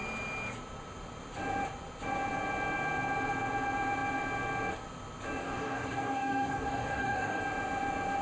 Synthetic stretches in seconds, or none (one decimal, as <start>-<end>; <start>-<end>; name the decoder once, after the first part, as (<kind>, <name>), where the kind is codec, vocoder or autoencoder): 5.4-7.4 (codec, DAC)